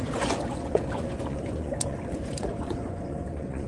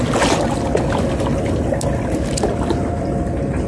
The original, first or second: second